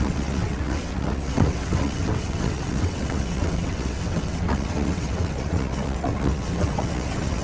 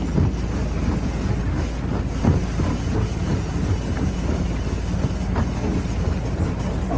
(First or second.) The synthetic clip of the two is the first